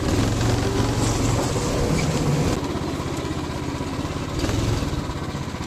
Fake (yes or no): no